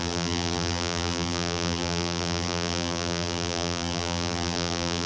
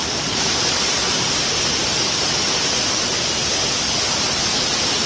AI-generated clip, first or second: first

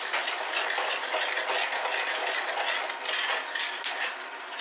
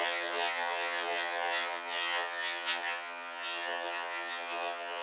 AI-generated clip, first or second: second